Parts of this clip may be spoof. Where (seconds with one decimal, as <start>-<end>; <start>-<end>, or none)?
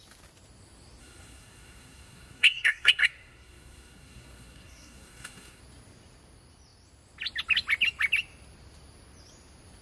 1.0-5.6